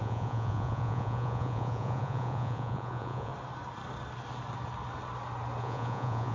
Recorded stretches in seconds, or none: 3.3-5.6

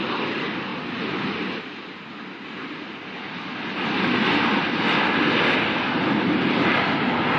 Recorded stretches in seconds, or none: 0.0-7.4